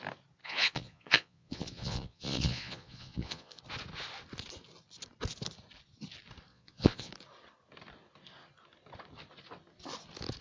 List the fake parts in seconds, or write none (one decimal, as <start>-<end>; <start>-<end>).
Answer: 0.4-3.6; 6.5-7.1